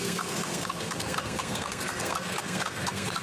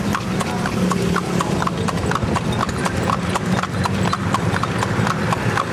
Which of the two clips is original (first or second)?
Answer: second